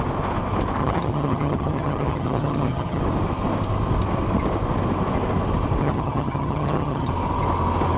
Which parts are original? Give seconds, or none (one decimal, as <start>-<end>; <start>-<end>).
0.0-0.8; 3.0-5.8; 7.1-8.0

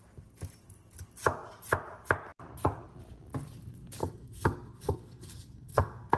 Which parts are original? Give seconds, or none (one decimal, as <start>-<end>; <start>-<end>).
0.0-4.0

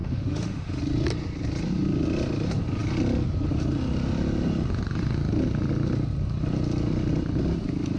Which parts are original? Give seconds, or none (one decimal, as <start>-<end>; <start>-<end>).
0.8-8.0

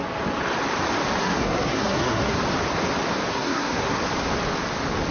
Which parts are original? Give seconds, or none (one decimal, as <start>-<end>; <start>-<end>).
0.0-1.2; 2.4-3.3; 4.0-5.1

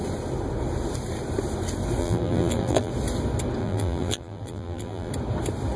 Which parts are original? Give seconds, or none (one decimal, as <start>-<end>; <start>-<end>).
0.0-2.0; 2.9-3.6; 5.1-5.8

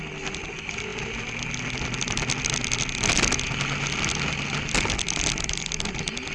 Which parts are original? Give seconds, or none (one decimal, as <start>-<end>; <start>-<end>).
0.0-6.3

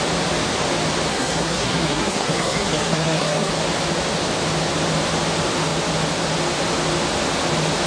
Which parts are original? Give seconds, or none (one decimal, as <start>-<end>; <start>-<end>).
0.0-1.1; 3.5-7.9

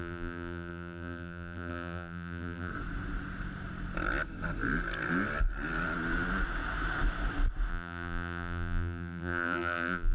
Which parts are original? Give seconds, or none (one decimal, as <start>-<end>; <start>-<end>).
2.7-7.7